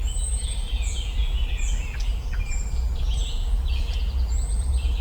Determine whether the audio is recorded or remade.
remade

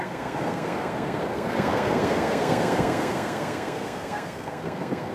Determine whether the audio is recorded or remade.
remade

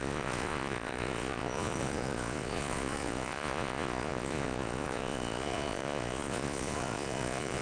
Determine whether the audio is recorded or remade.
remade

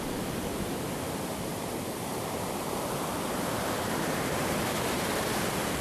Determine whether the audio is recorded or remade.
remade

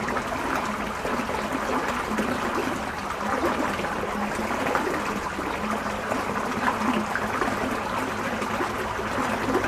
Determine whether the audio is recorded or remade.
recorded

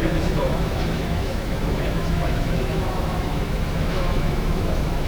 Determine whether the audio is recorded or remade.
remade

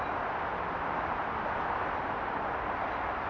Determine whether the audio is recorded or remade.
recorded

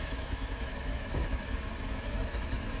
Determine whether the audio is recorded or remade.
remade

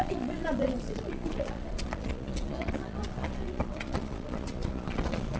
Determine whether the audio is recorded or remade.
remade